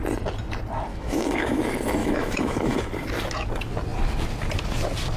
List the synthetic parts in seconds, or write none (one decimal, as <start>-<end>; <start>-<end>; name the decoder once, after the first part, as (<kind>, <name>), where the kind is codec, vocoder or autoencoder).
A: 0.9-1.6 (autoencoder, DAC-VAE); 2.0-2.8